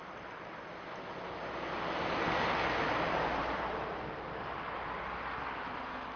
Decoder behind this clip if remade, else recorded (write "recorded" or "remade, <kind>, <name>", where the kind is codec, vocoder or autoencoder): recorded